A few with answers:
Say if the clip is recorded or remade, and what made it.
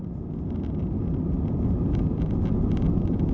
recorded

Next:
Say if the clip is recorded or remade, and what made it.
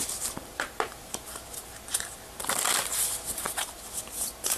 remade, vocoder, BigVGAN v2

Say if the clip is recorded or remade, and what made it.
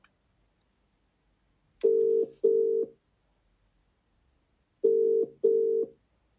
recorded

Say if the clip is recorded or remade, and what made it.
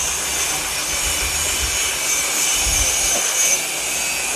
recorded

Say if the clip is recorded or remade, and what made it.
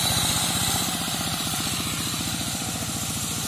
remade, vocoder, BigVGAN v2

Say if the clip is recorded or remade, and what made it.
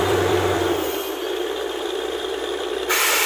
remade, vocoder, BigVGAN v2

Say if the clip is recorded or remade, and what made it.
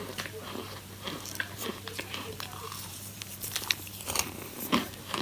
remade, vocoder, BigVGAN v2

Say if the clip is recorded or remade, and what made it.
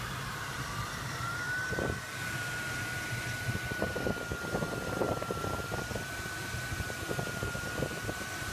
remade, vocoder, BigVGAN v2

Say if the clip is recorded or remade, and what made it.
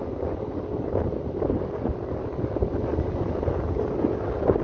recorded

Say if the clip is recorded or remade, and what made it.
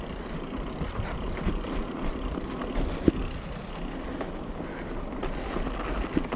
recorded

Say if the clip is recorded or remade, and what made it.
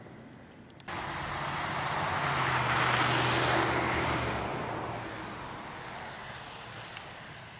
recorded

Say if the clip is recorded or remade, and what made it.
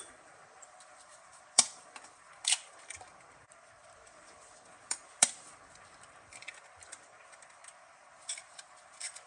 remade, vocoder, BigVGAN v2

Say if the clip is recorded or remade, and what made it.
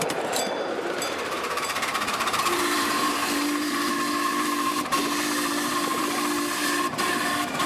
remade, vocoder, BigVGAN v2